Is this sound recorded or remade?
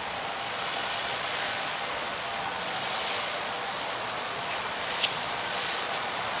remade